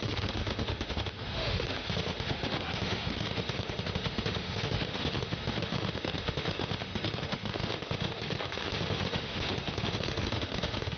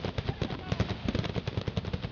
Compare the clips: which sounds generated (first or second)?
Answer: first